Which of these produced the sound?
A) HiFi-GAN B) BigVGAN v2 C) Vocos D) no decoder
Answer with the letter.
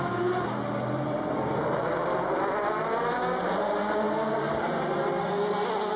B